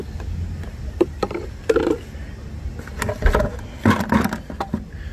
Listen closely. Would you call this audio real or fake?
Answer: real